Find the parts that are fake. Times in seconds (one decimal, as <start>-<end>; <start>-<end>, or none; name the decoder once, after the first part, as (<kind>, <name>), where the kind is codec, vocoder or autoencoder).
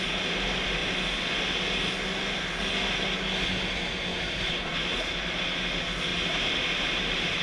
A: 4.1-5.1 (vocoder, BigVGAN v2); 6.1-7.4